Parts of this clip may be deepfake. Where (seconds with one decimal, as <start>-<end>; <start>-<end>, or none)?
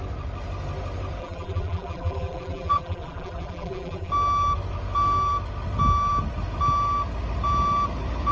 1.2-4.1